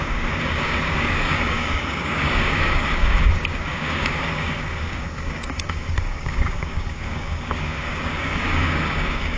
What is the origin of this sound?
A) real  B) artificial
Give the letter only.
B